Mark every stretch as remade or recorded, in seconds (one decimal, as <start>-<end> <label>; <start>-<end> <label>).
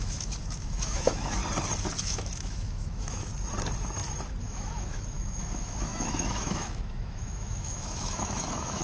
0.0-1.4 remade; 1.4-2.0 recorded; 2.0-3.3 remade; 3.3-4.4 recorded; 4.4-8.8 remade